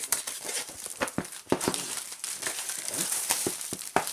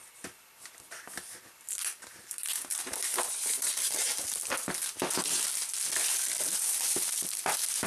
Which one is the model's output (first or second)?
first